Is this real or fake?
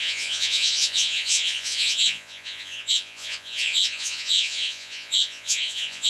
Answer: fake